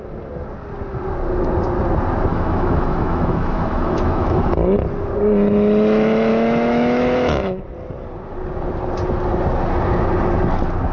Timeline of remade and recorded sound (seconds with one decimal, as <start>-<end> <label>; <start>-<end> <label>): 0.0-2.3 recorded; 2.3-4.4 remade; 4.4-6.3 recorded; 6.3-7.6 remade; 7.6-10.9 recorded

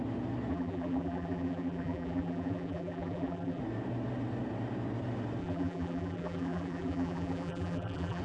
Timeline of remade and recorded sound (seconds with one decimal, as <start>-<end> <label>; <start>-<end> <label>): 0.0-0.5 recorded; 0.5-3.6 remade; 3.6-5.4 recorded; 5.4-8.2 remade

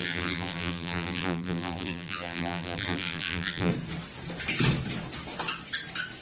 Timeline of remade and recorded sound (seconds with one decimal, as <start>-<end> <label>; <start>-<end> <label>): 0.0-3.7 remade; 3.7-6.2 recorded

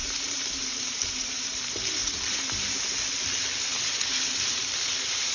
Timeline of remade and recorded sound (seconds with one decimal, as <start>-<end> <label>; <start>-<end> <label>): 0.0-1.6 remade; 1.6-2.0 recorded; 2.0-2.5 remade; 2.5-3.7 recorded; 3.7-5.3 remade

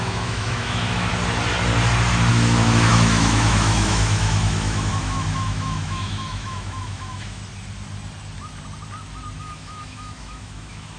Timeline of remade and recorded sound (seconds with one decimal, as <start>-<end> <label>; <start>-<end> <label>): 0.0-1.1 remade; 1.1-2.3 recorded; 2.3-7.4 remade; 7.4-9.4 recorded; 9.4-11.0 remade

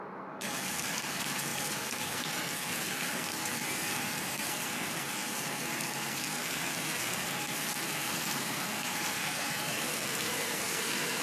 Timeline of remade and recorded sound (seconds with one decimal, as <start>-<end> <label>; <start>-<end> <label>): 0.0-11.2 remade

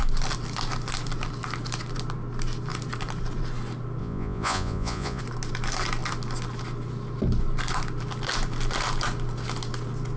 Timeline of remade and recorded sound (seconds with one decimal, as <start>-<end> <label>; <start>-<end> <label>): 0.0-4.0 recorded; 4.0-5.2 remade; 5.2-10.2 recorded